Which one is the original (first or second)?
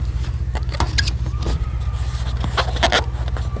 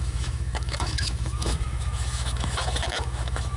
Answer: first